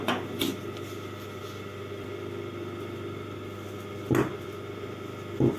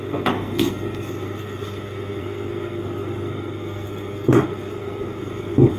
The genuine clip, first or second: first